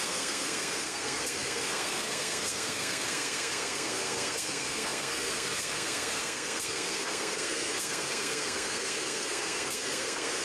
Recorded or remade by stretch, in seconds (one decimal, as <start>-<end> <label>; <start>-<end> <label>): 0.0-10.4 remade